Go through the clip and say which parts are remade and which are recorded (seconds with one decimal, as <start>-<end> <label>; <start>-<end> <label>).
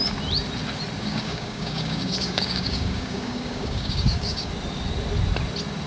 0.0-1.0 recorded; 1.0-4.5 remade; 4.5-5.9 recorded